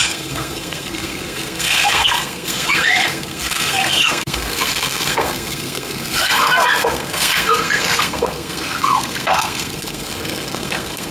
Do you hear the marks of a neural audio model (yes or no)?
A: yes